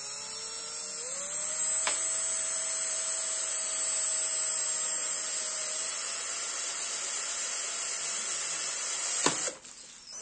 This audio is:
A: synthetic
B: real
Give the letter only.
B